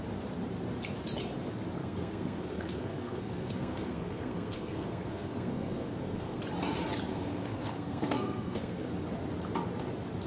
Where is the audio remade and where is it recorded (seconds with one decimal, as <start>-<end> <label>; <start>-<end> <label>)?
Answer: 0.0-1.8 recorded; 1.8-6.4 remade; 6.4-7.1 recorded; 7.1-8.9 remade; 8.9-10.3 recorded